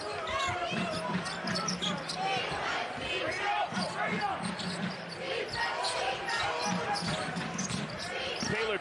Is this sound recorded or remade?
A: recorded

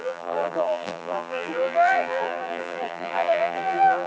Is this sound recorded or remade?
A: remade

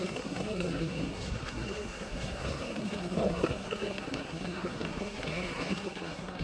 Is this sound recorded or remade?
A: remade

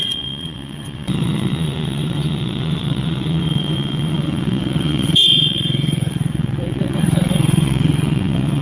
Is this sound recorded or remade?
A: remade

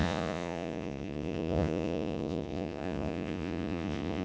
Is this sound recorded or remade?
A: remade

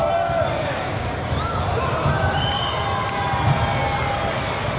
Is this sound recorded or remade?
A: recorded